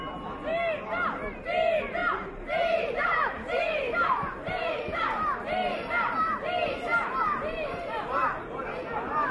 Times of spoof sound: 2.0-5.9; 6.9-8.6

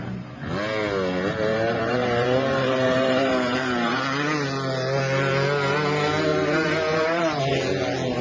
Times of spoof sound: 1.5-4.0; 6.3-7.4

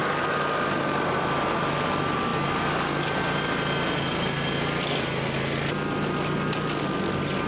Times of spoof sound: none

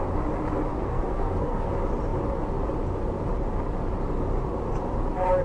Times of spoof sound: 0.7-1.7